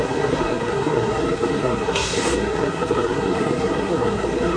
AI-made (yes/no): yes